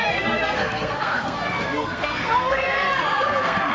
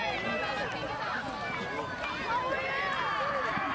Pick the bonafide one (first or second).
second